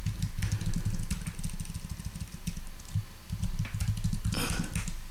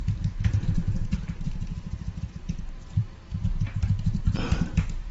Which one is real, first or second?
first